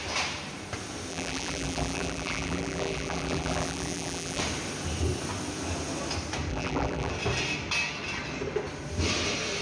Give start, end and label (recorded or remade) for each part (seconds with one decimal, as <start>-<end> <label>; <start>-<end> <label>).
0.0-1.1 recorded; 1.1-4.4 remade; 4.4-6.5 recorded; 6.5-7.1 remade; 7.1-9.6 recorded